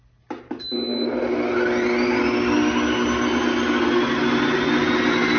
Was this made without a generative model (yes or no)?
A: yes